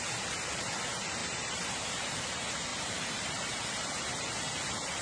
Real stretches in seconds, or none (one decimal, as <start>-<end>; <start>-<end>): 0.0-1.2; 2.3-2.7; 3.7-5.0